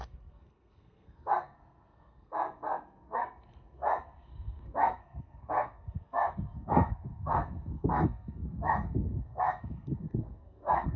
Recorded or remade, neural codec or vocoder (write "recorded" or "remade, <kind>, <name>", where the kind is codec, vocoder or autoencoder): remade, codec, SNAC